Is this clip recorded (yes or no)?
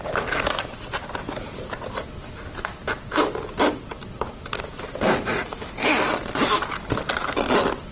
yes